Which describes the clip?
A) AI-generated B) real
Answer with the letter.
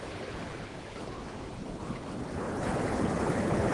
A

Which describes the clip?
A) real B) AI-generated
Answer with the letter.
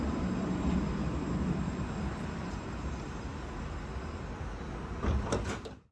A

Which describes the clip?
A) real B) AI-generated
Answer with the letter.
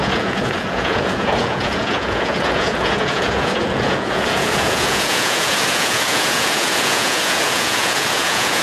B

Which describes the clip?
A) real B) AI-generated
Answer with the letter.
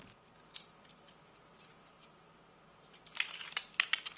A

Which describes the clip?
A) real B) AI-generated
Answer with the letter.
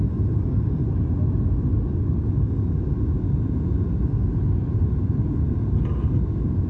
A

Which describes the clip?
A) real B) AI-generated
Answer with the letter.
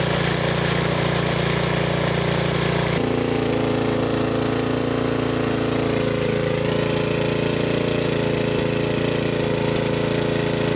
A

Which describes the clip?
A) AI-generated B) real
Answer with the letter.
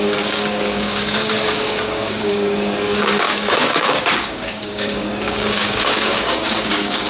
A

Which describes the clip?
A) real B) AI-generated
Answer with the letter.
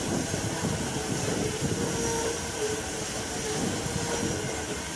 A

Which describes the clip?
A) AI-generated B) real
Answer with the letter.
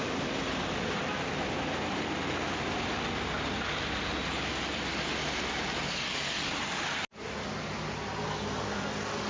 B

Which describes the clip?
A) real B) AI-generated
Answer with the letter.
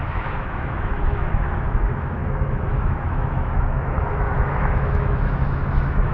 B